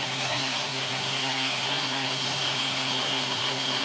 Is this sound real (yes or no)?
no